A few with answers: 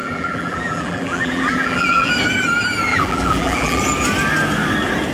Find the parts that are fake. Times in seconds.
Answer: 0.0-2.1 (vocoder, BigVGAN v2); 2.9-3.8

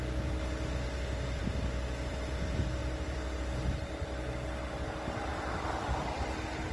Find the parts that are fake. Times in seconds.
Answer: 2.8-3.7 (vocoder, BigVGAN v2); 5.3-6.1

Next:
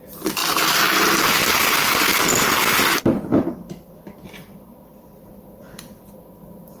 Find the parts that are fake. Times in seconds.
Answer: none

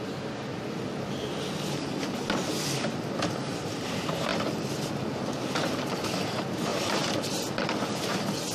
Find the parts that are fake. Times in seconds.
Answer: 4.3-5.4 (vocoder, BigVGAN v2); 6.7-7.5

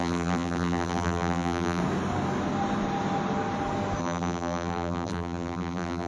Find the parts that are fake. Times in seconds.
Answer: 0.0-1.8 (vocoder, BigVGAN v2); 4.0-6.1

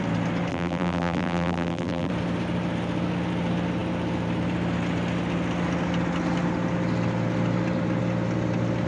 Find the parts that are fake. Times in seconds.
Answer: 0.5-2.1 (vocoder, BigVGAN v2)

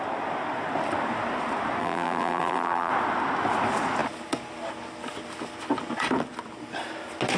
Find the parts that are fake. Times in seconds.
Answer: 1.8-2.9 (vocoder, BigVGAN v2)